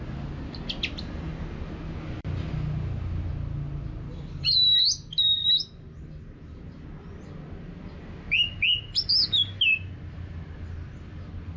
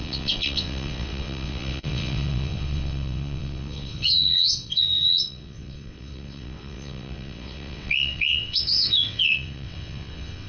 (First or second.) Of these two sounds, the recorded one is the first